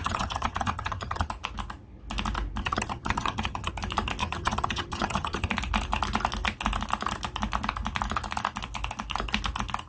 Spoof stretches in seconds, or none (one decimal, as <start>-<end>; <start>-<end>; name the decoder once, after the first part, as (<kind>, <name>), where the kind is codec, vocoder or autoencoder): 0.0-1.3 (vocoder, HiFi-GAN); 2.6-3.7; 4.2-5.5